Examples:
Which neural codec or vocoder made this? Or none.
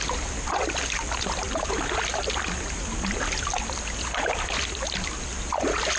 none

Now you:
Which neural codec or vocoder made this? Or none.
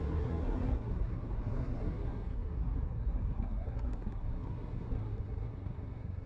codec, SNAC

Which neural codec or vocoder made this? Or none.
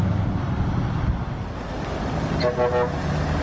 none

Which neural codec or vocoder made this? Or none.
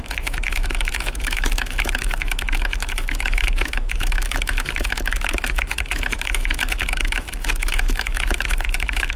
autoencoder, DAC-VAE